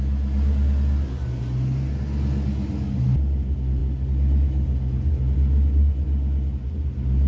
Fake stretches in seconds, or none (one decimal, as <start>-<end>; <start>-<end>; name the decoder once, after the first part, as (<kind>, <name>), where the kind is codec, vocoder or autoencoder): none